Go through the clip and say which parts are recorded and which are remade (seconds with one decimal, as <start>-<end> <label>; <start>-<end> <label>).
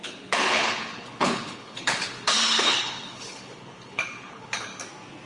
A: 0.0-4.7 remade; 4.7-5.3 recorded